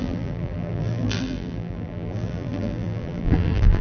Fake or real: fake